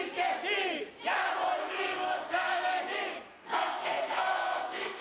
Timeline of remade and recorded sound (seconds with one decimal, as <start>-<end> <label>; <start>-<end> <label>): 0.0-1.6 recorded; 1.6-2.8 remade; 2.8-3.3 recorded; 3.3-5.0 remade